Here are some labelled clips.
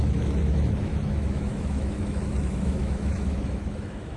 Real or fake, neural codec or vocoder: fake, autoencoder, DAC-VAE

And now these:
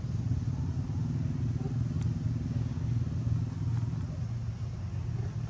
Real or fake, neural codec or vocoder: real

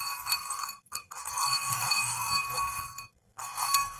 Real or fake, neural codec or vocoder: fake, codec, SNAC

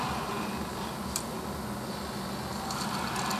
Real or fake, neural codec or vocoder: real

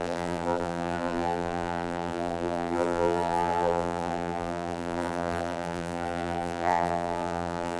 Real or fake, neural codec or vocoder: fake, vocoder, BigVGAN v2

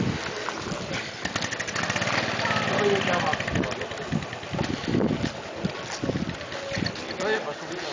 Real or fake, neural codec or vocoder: real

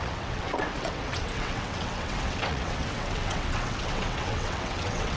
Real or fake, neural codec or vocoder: fake, vocoder, WaveNeXt